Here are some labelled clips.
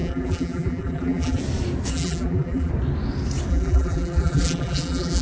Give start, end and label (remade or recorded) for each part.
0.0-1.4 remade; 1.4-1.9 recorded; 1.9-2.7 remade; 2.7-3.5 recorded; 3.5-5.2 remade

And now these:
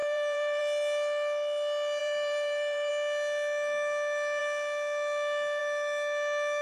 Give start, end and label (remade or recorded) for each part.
0.0-0.6 remade; 0.6-2.0 recorded; 2.0-2.9 remade; 2.9-6.6 recorded

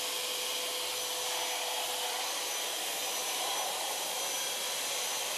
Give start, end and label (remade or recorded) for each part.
0.0-3.2 recorded; 3.2-4.2 remade; 4.2-5.4 recorded